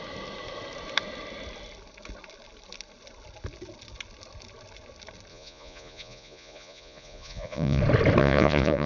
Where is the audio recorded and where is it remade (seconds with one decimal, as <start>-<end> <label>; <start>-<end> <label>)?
0.0-5.3 recorded; 5.3-7.8 remade; 7.8-8.2 recorded; 8.2-8.9 remade